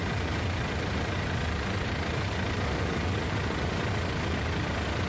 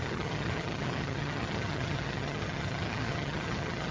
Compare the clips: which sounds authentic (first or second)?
first